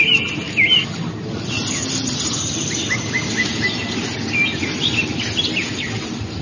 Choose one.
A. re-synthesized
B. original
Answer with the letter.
B